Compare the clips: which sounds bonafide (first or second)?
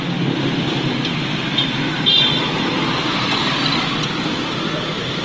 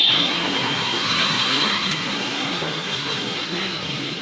first